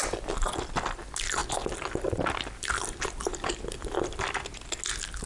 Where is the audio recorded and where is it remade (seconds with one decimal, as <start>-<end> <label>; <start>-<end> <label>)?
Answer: 0.0-5.3 recorded